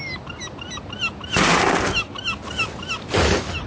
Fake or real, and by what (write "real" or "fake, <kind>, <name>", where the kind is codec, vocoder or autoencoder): real